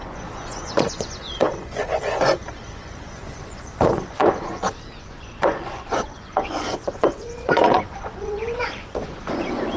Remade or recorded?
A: remade